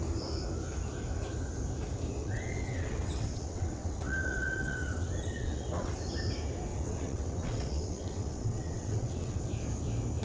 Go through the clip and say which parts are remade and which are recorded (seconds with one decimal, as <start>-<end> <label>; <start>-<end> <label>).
0.0-2.2 recorded; 2.2-5.9 remade; 5.9-6.7 recorded; 6.7-9.4 remade; 9.4-10.2 recorded